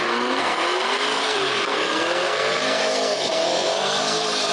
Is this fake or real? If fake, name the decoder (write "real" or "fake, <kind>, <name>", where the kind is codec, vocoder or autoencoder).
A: fake, codec, SNAC